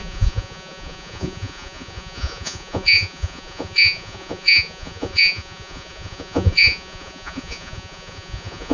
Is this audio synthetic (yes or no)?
yes